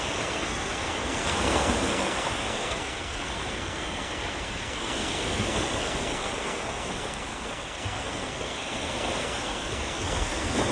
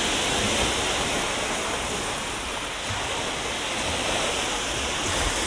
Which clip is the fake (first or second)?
first